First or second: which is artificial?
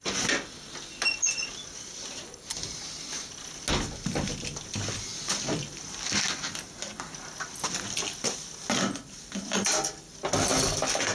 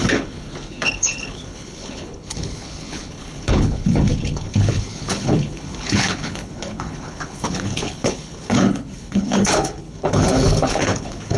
second